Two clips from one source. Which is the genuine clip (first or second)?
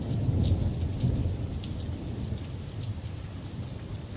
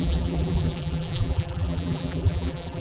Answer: first